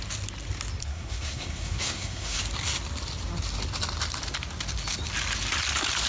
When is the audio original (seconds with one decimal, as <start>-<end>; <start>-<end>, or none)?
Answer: 0.0-0.8; 2.4-6.1